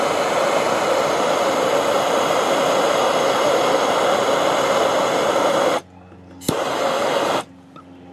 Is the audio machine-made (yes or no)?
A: no